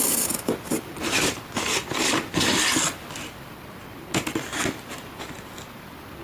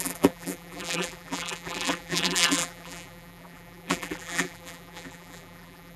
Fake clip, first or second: second